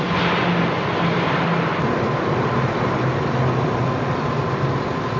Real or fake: real